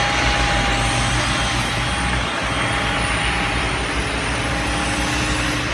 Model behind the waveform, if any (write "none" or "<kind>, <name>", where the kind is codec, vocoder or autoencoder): none